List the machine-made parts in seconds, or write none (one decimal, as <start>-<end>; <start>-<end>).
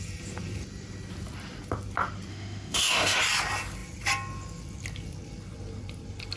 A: 2.3-3.2